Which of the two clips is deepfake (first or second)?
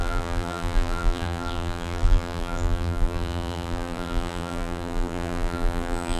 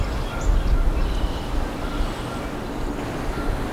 first